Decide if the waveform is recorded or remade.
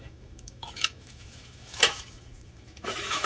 remade